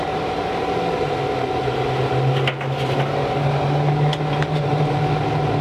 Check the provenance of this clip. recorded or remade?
recorded